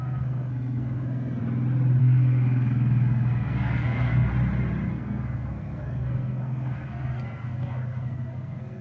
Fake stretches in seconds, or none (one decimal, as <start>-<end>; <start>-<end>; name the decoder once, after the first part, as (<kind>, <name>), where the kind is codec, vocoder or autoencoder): 0.0-1.4 (codec, SNAC); 2.0-4.3; 4.9-8.8